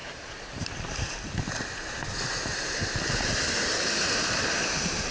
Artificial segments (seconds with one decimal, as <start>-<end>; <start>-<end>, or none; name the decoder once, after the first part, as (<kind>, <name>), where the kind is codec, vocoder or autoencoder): 0.0-3.1 (vocoder, BigVGAN v2); 4.0-5.1